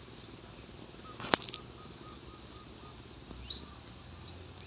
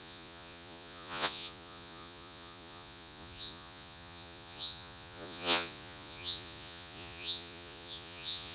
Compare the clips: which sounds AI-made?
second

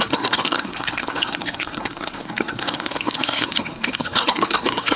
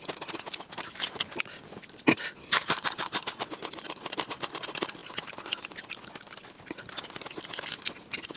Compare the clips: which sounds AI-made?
first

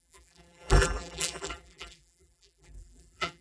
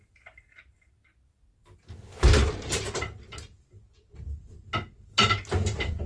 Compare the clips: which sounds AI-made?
first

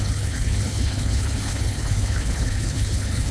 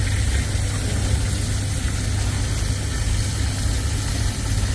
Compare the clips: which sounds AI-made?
first